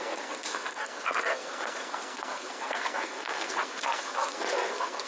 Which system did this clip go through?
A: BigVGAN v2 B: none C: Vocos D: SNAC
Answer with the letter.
D